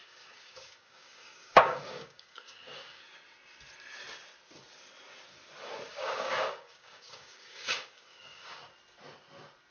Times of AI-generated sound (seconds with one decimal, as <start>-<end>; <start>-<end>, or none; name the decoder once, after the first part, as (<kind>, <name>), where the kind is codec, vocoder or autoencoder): 0.0-3.0 (codec, DAC); 5.9-8.6